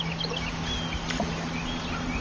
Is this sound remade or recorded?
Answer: recorded